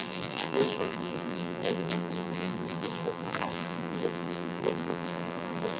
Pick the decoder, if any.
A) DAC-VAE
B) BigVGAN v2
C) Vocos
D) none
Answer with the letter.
B